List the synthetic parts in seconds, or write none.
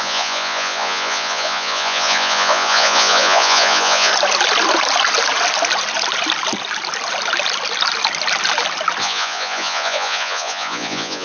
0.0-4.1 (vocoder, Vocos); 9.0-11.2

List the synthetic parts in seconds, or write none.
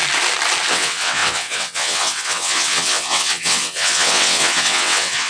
0.7-5.3 (vocoder, WaveNeXt)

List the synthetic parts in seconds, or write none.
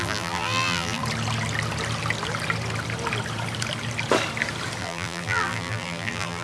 0.0-1.0 (vocoder, BigVGAN v2); 4.8-6.4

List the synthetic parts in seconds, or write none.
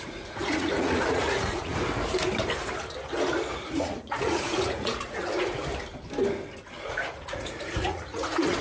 0.0-1.7 (vocoder, Vocos); 3.7-5.6; 6.8-8.6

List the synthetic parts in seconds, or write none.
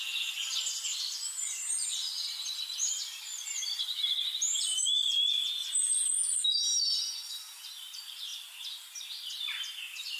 0.9-4.8 (vocoder, BigVGAN v2); 5.6-6.1; 8.3-9.1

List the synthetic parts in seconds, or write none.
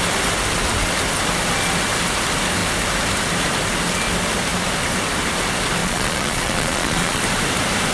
5.8-7.2 (vocoder, Vocos)